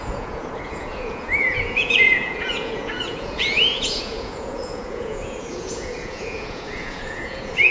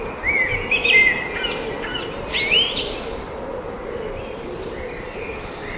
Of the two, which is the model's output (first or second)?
first